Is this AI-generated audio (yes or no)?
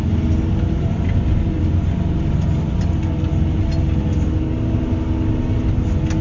no